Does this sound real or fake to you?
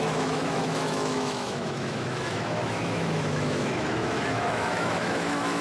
fake